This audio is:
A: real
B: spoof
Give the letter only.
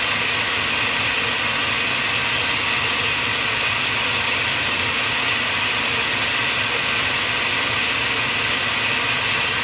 A